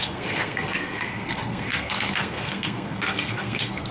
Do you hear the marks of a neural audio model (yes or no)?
yes